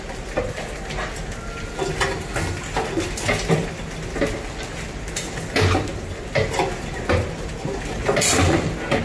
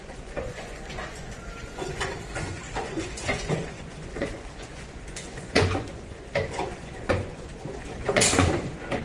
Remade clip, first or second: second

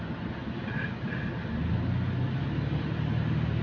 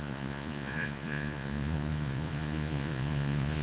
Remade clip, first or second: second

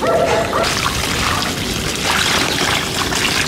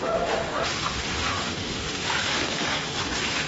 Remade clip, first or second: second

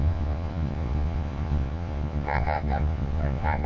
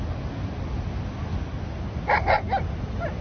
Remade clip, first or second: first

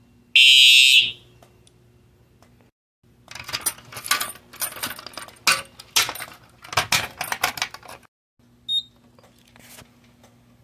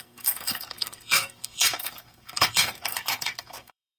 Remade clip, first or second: second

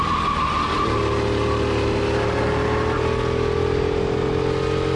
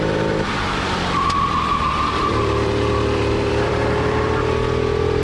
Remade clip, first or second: second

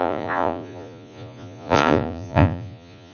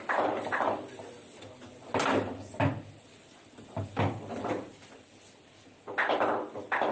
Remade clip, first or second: first